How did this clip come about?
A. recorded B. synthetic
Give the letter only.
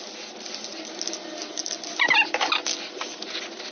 A